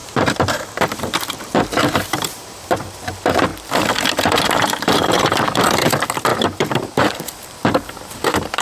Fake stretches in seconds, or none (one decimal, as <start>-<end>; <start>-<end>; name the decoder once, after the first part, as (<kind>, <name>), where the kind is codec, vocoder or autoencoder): 0.0-3.5 (vocoder, BigVGAN v2); 4.5-8.6